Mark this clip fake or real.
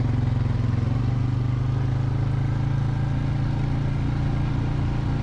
real